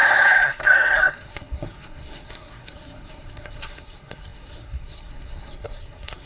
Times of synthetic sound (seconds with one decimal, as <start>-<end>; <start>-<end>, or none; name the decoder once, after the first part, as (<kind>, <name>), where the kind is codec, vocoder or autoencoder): 0.0-6.3 (codec, SNAC)